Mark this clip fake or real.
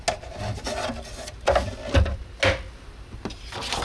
real